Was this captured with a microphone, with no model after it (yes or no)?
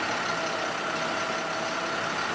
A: yes